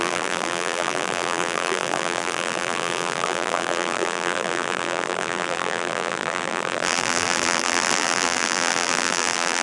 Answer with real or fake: fake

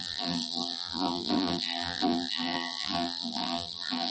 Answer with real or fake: fake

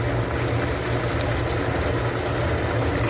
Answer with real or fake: real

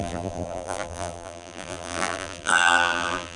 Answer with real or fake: fake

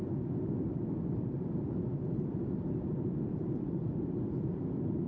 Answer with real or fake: fake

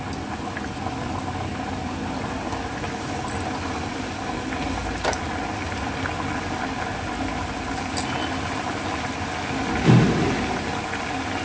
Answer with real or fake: real